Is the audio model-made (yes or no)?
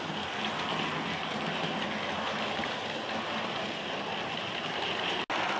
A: no